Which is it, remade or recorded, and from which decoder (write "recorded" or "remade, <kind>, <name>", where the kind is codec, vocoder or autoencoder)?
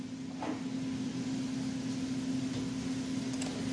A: recorded